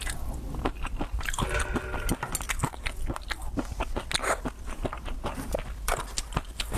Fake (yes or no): no